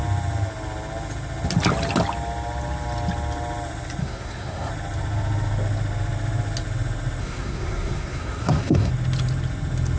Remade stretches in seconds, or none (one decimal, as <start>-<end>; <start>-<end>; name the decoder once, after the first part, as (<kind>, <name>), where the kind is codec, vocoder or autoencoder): 4.0-4.7 (codec, SNAC); 7.2-8.9